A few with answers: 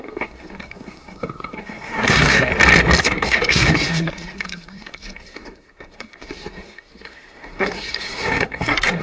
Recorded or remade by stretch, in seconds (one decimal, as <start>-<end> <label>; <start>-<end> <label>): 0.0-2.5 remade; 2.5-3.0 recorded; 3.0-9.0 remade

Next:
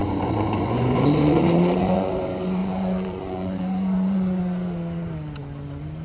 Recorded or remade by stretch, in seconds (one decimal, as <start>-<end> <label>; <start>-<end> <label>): 0.0-2.2 remade; 2.2-2.6 recorded; 2.6-4.4 remade; 4.4-6.0 recorded

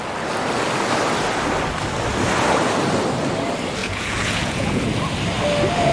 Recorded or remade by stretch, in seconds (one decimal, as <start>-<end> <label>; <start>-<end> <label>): 0.0-3.8 recorded; 3.8-4.8 remade; 4.8-5.9 recorded

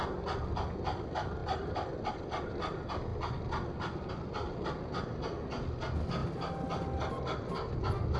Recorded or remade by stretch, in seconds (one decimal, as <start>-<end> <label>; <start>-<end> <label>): 0.0-8.2 recorded

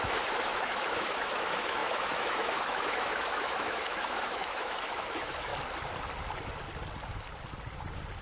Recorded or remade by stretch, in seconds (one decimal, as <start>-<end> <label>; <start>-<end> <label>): 0.0-5.5 remade; 5.5-8.2 recorded